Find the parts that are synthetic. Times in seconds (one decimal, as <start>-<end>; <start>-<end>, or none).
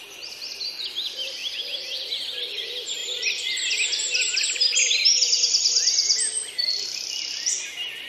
none